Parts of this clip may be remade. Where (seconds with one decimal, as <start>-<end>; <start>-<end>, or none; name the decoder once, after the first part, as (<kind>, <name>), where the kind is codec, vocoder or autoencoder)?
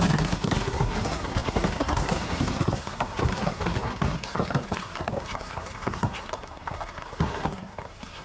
0.0-8.2 (codec, SNAC)